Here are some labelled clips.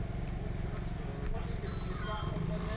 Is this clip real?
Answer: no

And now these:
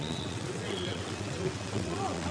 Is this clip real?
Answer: no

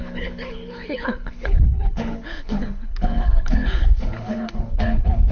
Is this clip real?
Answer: no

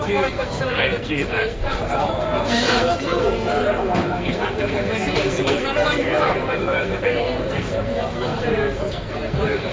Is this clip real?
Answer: no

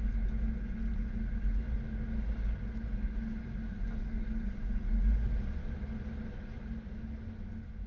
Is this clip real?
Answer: yes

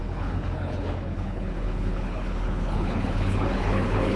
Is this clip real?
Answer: no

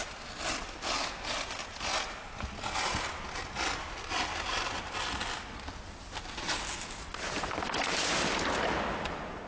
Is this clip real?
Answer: yes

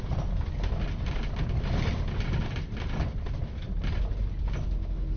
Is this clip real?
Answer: yes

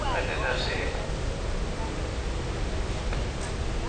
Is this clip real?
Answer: yes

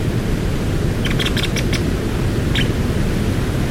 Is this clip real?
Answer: yes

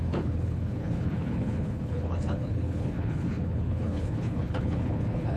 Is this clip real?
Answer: no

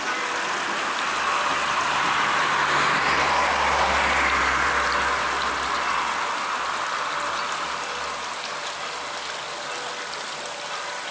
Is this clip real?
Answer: yes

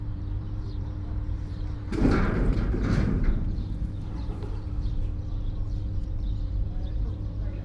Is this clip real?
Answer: no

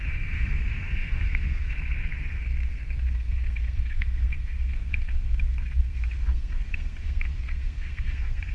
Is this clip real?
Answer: no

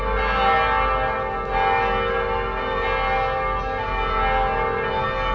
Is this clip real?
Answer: yes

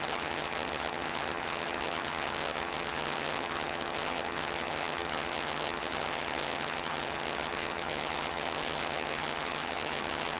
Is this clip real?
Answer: no